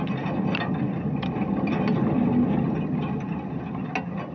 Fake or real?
real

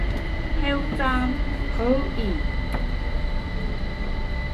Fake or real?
real